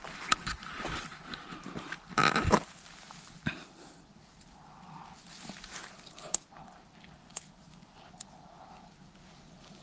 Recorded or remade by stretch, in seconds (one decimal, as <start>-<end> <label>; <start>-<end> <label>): 0.0-7.2 recorded; 7.2-8.0 remade; 8.0-9.8 recorded